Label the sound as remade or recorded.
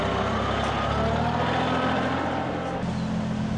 recorded